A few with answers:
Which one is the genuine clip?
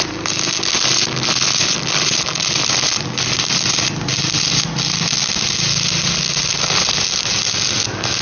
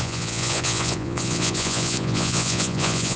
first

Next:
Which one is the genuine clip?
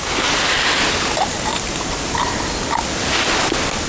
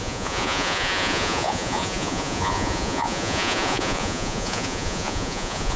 first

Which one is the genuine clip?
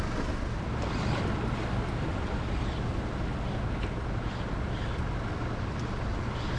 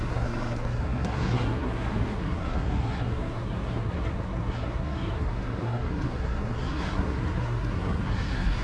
first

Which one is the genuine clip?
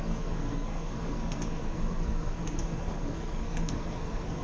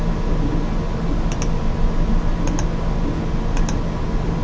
second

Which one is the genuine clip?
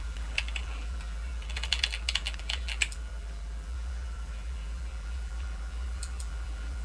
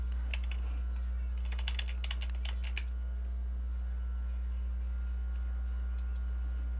second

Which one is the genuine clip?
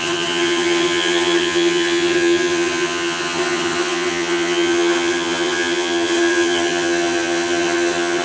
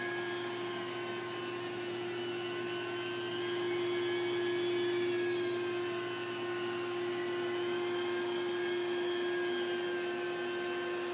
second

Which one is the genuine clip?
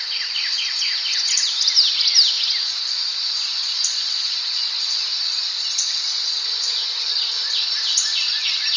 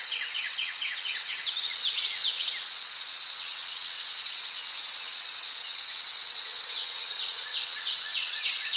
first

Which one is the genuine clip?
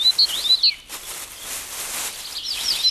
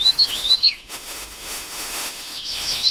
first